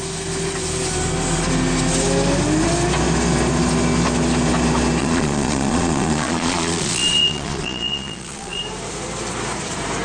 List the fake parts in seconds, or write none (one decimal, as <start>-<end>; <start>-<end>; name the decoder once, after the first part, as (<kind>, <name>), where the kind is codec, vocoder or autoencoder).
5.0-8.6 (vocoder, Vocos)